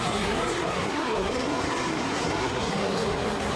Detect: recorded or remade remade